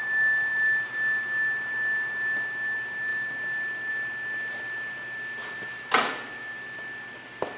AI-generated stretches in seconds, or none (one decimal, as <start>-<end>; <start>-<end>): 5.4-6.5